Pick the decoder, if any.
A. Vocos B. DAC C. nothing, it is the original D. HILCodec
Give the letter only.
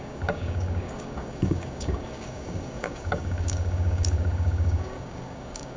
B